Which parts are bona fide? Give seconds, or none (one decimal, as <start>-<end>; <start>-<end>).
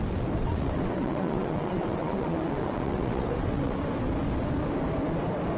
0.0-0.4; 3.8-5.6